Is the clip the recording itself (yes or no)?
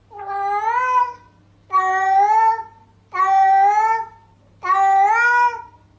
yes